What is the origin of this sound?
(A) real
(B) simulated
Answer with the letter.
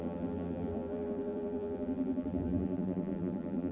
B